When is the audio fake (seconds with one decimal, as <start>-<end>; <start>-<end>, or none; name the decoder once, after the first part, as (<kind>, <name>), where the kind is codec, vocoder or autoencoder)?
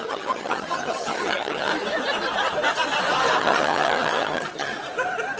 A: 0.0-1.7 (vocoder, HiFi-GAN); 3.4-4.7